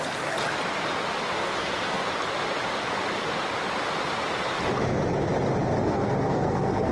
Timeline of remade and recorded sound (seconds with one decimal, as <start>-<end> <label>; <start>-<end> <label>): 0.0-1.4 recorded; 1.4-2.0 remade; 2.0-5.8 recorded; 5.8-6.9 remade